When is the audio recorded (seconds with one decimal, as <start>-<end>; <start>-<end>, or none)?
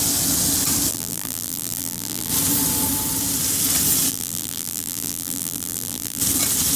0.0-0.9; 2.3-4.1; 6.2-6.8